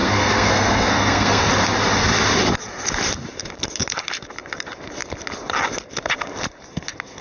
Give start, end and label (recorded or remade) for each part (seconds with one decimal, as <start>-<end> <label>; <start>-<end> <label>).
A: 0.0-1.5 remade; 1.5-7.2 recorded